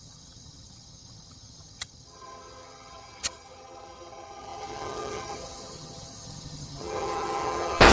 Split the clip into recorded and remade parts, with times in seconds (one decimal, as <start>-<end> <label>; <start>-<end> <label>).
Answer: 0.0-7.9 remade

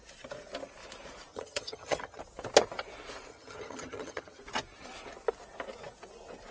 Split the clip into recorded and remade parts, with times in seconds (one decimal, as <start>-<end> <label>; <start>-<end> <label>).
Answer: 0.0-1.3 recorded; 1.3-2.2 remade; 2.2-3.3 recorded; 3.3-4.4 remade; 4.4-6.5 recorded

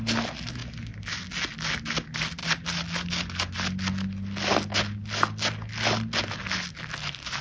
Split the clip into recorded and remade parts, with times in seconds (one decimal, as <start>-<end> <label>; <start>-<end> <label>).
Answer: 0.0-7.4 recorded

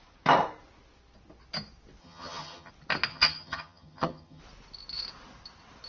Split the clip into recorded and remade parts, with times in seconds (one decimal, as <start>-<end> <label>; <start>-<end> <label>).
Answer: 0.0-2.0 recorded; 2.0-2.7 remade; 2.7-3.1 recorded; 3.1-4.4 remade; 4.4-5.9 recorded

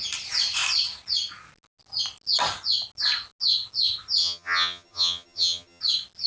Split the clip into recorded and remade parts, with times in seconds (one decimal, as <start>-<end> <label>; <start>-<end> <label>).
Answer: 0.0-4.2 recorded; 4.2-5.8 remade; 5.8-6.3 recorded